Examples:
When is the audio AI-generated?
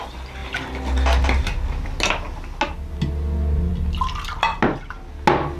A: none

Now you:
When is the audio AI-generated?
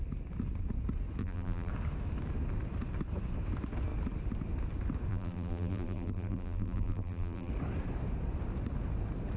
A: 1.2-1.7 (vocoder, BigVGAN v2); 5.1-7.5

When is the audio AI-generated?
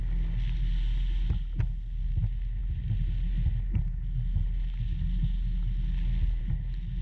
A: none